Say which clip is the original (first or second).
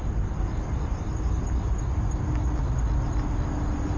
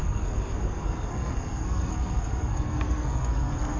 first